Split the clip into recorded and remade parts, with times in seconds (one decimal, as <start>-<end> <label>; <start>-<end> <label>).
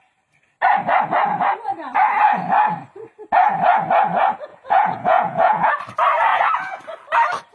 0.0-4.5 recorded; 4.5-5.7 remade; 5.7-6.3 recorded; 6.3-6.8 remade; 6.8-7.5 recorded